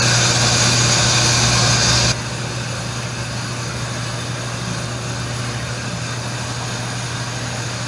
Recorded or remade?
recorded